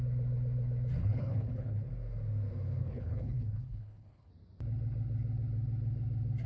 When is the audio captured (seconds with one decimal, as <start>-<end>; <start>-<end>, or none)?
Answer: 0.0-1.0; 1.9-2.8; 4.3-6.5